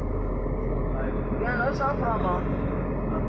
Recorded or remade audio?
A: recorded